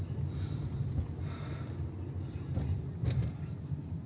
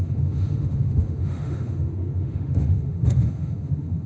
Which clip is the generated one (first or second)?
second